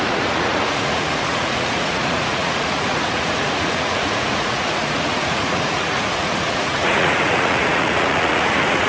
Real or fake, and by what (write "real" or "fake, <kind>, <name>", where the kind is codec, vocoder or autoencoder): fake, vocoder, Vocos